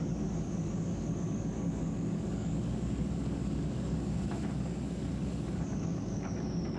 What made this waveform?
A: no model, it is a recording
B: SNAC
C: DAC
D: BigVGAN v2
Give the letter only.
C